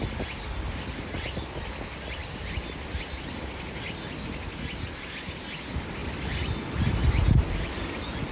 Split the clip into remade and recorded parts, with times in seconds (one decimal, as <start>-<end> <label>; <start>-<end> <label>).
0.0-8.3 recorded

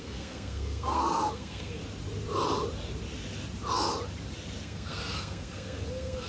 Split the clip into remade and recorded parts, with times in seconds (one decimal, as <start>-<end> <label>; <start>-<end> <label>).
0.0-1.8 remade; 1.8-4.6 recorded; 4.6-6.3 remade

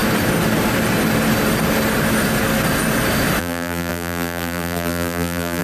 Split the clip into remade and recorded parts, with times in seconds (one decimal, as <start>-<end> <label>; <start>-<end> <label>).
0.0-3.4 recorded; 3.4-5.6 remade